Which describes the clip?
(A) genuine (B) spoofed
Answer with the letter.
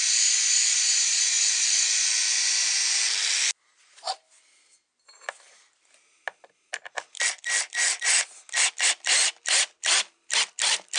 A